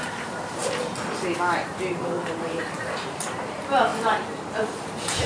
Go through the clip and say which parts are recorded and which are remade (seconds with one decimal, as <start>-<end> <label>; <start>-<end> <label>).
0.0-0.6 remade; 0.6-1.9 recorded; 1.9-5.3 remade